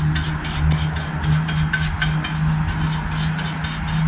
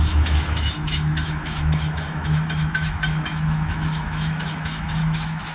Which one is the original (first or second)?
first